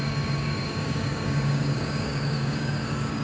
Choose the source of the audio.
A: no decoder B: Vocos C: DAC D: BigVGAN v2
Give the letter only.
C